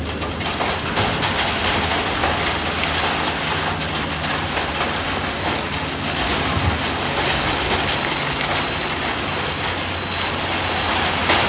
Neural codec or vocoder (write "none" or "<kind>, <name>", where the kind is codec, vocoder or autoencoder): none